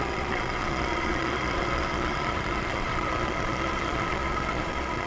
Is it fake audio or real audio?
fake